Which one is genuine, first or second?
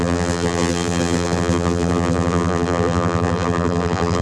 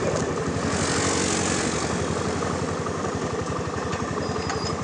second